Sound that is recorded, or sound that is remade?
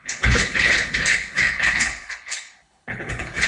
remade